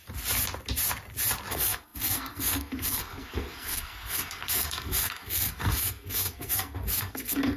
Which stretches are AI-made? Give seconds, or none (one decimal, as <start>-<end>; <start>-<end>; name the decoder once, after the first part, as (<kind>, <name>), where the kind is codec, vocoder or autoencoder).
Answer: 1.5-7.6 (codec, SNAC)